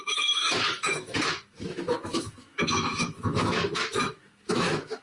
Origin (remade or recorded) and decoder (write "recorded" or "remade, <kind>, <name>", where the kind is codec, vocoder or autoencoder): remade, autoencoder, DAC-VAE